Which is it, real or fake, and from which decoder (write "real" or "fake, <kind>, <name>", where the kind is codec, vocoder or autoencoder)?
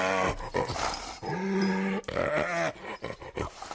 real